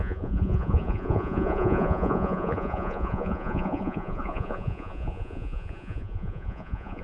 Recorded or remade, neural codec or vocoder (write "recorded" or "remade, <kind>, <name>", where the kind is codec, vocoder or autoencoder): remade, vocoder, Vocos